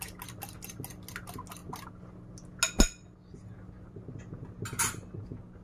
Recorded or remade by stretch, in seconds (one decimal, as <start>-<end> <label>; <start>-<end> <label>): 0.0-5.6 recorded